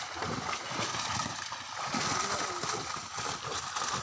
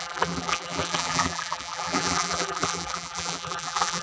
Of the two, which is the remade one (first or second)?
second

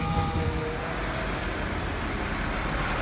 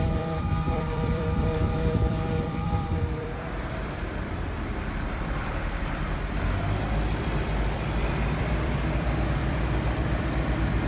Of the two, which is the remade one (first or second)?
second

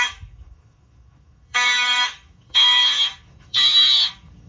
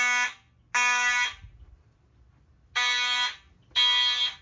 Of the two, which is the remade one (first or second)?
first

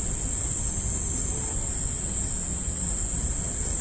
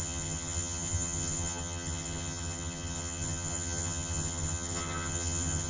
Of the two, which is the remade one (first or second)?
second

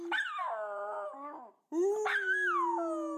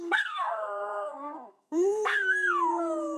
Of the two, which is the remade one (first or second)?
second